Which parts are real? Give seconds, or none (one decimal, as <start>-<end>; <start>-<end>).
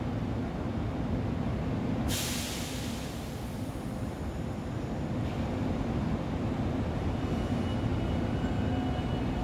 0.0-9.4